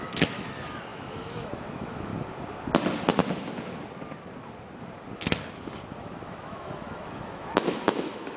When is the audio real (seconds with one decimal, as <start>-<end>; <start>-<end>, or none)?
2.1-6.0